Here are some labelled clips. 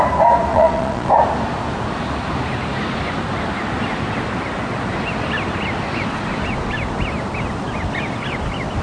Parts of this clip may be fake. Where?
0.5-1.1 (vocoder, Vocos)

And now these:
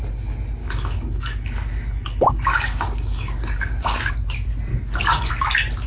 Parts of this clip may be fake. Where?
0.6-4.1 (codec, DAC); 4.7-5.3

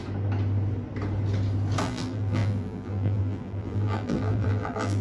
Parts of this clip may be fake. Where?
1.8-5.0 (vocoder, BigVGAN v2)

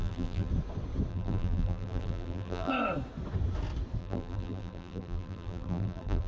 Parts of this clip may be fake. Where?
0.0-0.5 (vocoder, BigVGAN v2); 1.1-2.7; 4.0-6.3

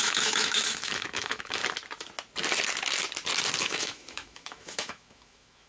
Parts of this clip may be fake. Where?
0.0-1.6 (autoencoder, DAC-VAE); 3.6-5.7

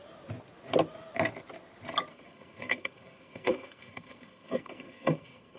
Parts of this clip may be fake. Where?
2.1-5.6 (codec, SNAC)